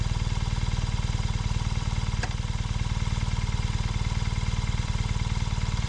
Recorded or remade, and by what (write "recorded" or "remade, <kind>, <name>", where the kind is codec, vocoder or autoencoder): recorded